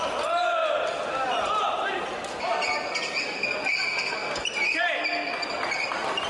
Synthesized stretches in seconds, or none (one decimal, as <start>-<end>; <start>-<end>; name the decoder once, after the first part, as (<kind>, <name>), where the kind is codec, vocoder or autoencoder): none

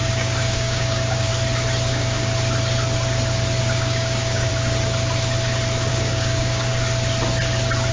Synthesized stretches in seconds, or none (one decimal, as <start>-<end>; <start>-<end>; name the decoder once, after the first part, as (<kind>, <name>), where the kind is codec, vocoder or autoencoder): 0.0-1.3 (codec, DAC); 1.9-2.3; 3.6-4.5; 5.9-6.7

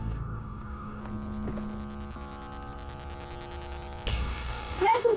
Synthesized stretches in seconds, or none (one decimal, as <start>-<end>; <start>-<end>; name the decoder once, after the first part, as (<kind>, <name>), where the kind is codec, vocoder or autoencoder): 0.0-1.0 (codec, DAC); 4.1-5.2

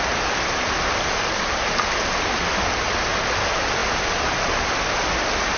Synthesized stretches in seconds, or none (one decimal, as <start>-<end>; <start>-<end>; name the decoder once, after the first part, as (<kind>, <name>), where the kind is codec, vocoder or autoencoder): none

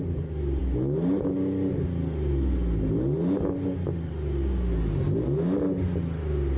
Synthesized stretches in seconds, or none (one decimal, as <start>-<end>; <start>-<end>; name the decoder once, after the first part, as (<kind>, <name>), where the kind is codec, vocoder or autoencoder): none